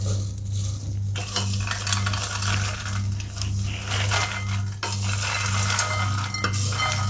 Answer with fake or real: real